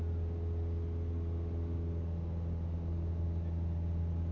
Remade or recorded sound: recorded